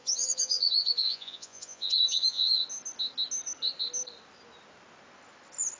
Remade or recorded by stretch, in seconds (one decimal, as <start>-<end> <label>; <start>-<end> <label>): 0.0-2.6 remade; 2.6-5.8 recorded